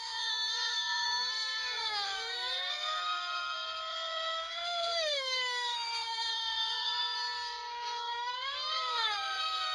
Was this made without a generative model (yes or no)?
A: no